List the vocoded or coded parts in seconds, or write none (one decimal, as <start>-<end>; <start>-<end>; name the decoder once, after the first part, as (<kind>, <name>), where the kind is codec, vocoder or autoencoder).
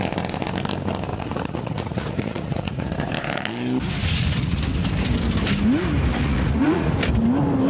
1.1-2.9 (vocoder, Vocos); 4.0-4.6; 6.1-6.9